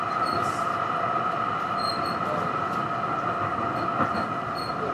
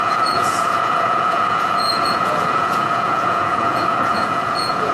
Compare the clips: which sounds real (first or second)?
first